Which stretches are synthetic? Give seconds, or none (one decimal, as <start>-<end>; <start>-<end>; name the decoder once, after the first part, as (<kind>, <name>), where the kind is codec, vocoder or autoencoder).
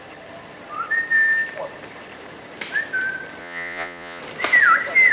3.4-4.2 (vocoder, Vocos)